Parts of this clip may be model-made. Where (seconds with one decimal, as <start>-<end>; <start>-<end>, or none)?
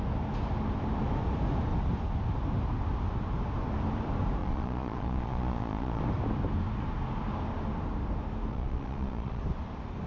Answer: 4.4-6.0; 8.5-9.4